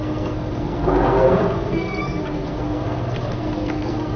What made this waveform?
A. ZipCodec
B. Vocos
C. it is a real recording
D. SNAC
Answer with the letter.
D